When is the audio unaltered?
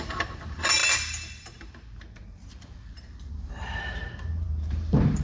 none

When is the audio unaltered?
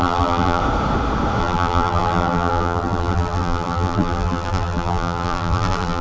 0.6-1.4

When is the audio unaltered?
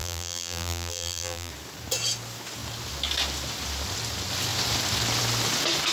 1.5-5.9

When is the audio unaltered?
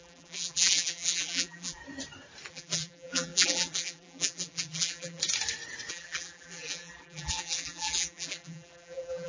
1.8-2.5; 5.2-5.9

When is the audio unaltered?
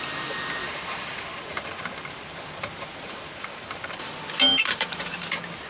0.0-0.6; 4.0-4.5; 5.3-5.7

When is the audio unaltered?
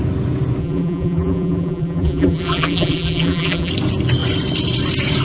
0.0-0.6; 3.7-5.2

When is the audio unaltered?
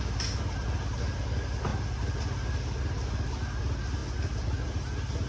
0.0-5.3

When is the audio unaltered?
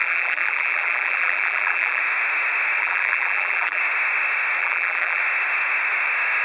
2.0-2.8; 3.8-4.6; 5.2-6.4